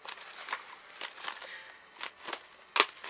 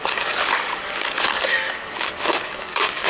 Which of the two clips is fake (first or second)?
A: second